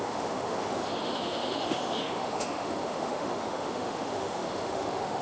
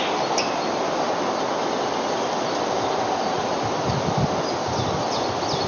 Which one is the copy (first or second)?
first